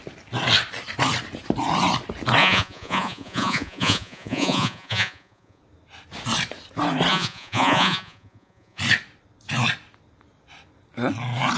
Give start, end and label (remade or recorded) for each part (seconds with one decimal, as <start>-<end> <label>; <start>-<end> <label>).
0.0-2.4 recorded; 2.4-5.6 remade; 5.6-7.1 recorded; 7.1-8.8 remade; 8.8-11.6 recorded